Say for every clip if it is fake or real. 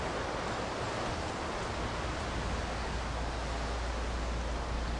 real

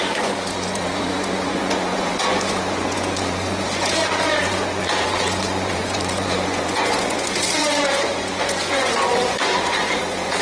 fake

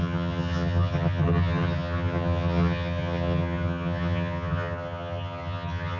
fake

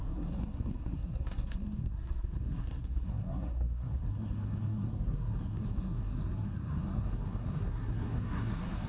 fake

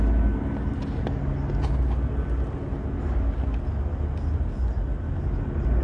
real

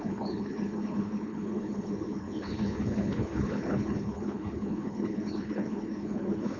fake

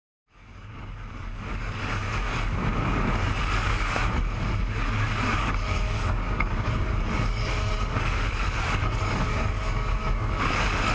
fake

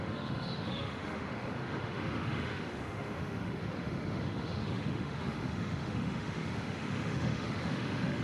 fake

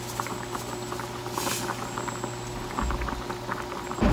real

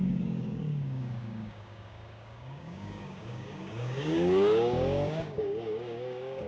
fake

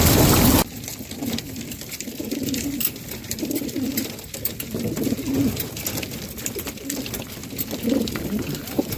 fake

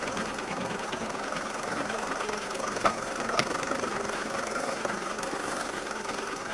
fake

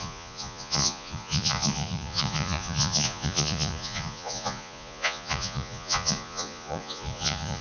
fake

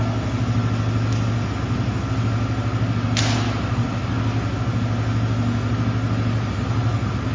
real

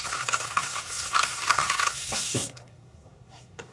fake